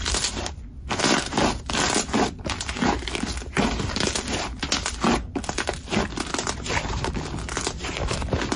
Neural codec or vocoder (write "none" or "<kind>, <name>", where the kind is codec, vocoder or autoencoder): none